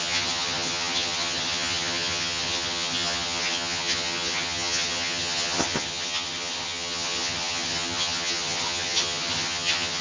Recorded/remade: remade